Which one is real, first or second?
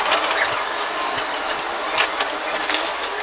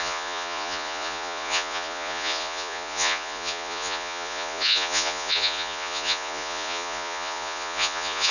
first